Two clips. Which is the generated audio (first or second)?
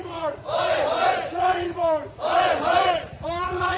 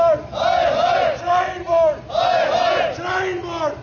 first